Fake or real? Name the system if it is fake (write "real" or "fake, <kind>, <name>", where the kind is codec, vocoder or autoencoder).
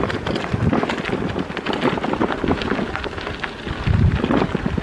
real